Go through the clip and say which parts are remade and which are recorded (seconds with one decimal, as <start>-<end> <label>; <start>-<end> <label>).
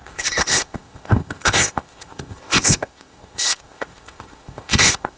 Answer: 0.0-5.2 remade